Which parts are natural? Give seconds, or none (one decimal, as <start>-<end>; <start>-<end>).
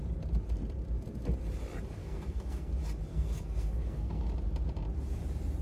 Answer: 0.0-2.0; 2.7-3.1; 4.3-5.6